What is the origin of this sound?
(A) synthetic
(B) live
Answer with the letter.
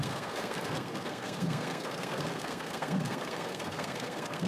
A